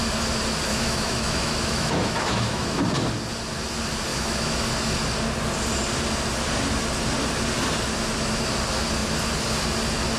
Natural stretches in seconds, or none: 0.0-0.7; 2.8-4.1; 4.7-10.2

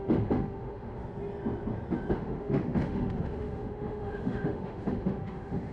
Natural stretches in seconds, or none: 1.0-2.1

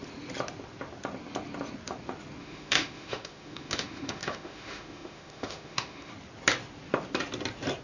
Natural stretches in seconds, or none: 0.0-2.4; 6.1-7.8

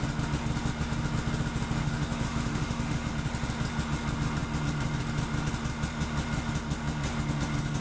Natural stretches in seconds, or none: 0.0-1.8; 3.1-7.8

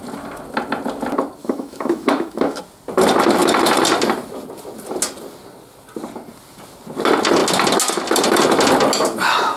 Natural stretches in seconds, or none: 0.0-1.4; 2.6-9.6

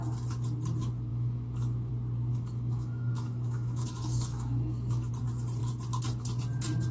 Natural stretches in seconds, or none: 0.0-1.1; 1.9-2.3; 5.1-6.9

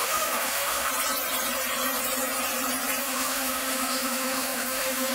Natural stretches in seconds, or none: 0.9-3.0

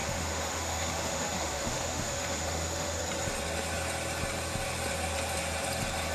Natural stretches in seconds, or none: 3.0-6.1